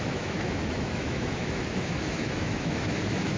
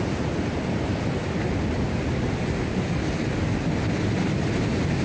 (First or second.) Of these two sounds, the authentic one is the second